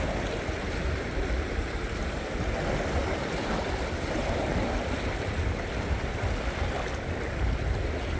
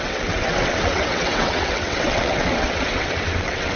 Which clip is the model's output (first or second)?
second